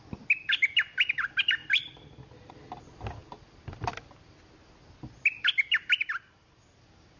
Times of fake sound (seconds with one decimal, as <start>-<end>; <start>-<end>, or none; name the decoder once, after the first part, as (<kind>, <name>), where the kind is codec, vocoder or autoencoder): 1.6-2.5 (vocoder, BigVGAN v2)